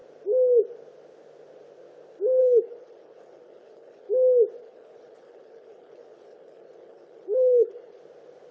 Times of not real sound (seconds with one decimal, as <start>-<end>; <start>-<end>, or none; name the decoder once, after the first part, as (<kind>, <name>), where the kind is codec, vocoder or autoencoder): 2.4-4.1 (codec, HILCodec); 4.6-8.0